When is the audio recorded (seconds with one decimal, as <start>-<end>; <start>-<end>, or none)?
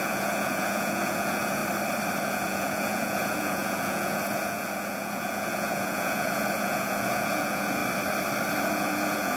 1.6-2.2; 7.8-8.6